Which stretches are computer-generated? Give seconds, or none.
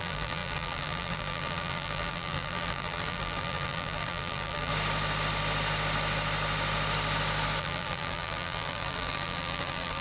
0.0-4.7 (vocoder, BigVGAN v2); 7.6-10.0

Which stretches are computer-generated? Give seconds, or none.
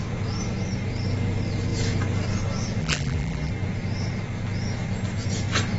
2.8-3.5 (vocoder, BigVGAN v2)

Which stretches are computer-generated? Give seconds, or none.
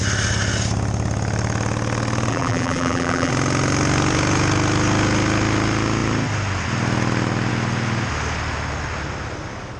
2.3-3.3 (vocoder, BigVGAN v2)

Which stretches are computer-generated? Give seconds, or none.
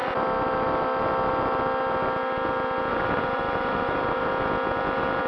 2.9-4.3 (vocoder, BigVGAN v2)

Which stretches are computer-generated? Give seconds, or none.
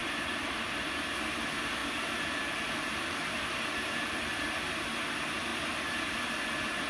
0.0-0.9 (vocoder, BigVGAN v2); 1.8-4.5; 5.5-6.4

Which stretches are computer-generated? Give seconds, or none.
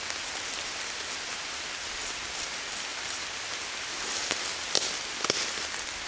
none